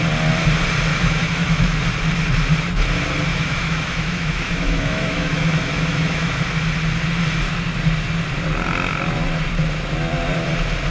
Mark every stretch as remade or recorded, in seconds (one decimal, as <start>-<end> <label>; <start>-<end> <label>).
0.0-0.9 recorded; 0.9-1.8 remade; 1.8-3.3 recorded; 3.3-6.4 remade; 6.4-10.9 recorded